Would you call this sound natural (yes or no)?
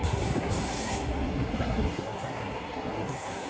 no